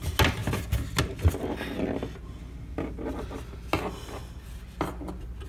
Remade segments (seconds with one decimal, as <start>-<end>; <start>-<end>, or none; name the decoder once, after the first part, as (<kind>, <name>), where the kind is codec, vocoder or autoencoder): none

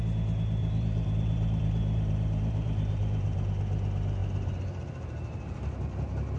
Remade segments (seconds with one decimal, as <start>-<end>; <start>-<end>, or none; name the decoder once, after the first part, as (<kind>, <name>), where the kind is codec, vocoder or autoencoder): 0.6-3.5 (vocoder, BigVGAN v2); 4.2-5.5